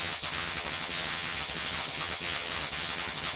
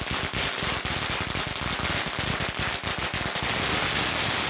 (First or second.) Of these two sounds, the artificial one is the first